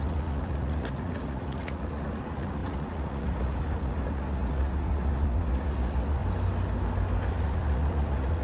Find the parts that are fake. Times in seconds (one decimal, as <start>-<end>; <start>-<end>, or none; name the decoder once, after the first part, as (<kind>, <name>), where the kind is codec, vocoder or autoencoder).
0.0-6.2 (vocoder, Vocos); 7.3-8.4